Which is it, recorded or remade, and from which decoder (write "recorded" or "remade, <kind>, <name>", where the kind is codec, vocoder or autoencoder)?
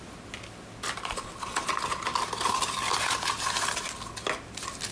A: recorded